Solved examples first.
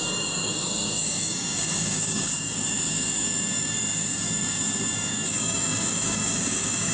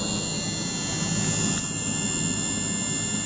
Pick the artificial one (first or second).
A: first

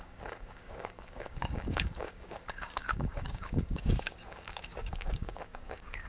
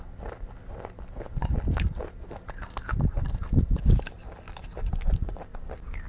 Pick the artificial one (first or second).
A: first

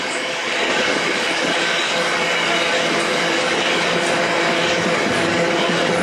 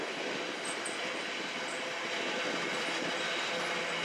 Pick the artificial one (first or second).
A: first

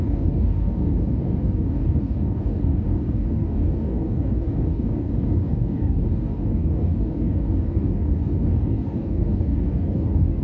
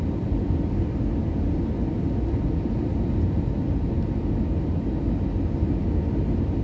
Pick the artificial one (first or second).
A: first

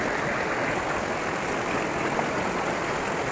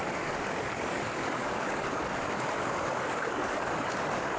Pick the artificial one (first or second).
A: second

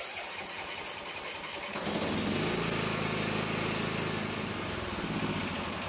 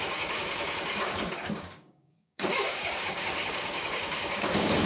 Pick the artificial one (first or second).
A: second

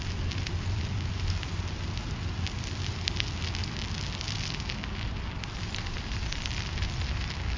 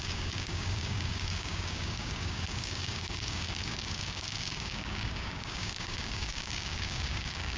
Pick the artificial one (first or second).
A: second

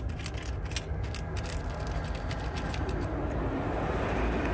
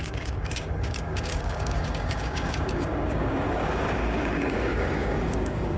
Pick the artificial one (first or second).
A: second